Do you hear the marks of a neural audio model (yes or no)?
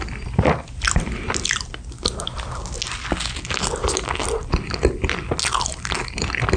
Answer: no